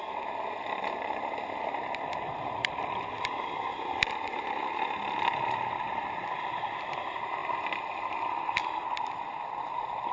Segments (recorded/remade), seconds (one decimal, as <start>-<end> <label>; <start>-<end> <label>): 0.0-10.1 recorded